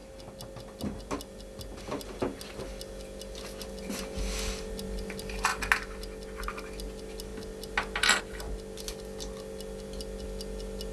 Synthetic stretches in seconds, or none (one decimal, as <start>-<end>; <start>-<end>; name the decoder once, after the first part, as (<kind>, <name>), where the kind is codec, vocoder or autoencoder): none